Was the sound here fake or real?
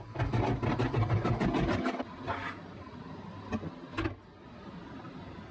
real